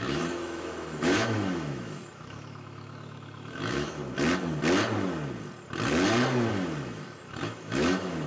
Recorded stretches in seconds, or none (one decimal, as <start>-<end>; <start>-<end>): 4.0-6.5

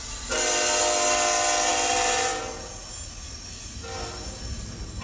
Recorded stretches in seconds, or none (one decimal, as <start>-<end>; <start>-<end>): 0.0-5.0

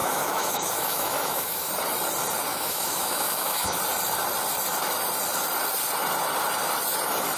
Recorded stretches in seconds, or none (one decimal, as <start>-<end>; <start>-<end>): 1.7-2.5; 3.8-7.4